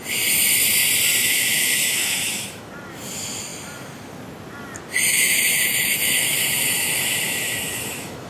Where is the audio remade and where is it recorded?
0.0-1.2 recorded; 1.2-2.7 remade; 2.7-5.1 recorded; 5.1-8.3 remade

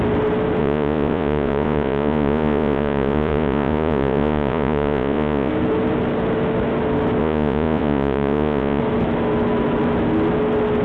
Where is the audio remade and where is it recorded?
0.0-0.6 recorded; 0.6-5.5 remade; 5.5-7.2 recorded; 7.2-8.8 remade; 8.8-10.8 recorded